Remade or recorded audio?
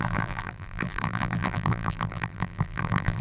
remade